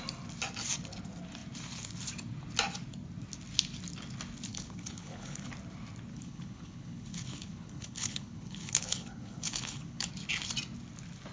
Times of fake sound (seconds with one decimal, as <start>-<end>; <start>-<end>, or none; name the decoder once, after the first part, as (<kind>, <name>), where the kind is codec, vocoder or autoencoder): 4.5-5.5 (codec, HILCodec); 6.1-10.1